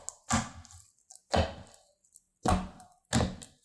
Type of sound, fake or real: real